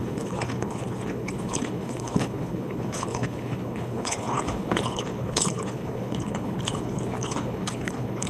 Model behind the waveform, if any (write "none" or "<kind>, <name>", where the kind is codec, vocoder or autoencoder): codec, HILCodec